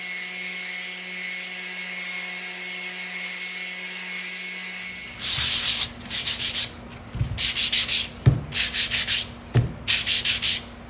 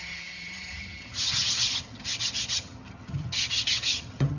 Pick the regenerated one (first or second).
second